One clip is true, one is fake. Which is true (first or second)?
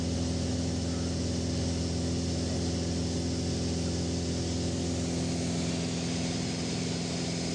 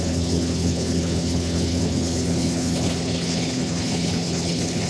first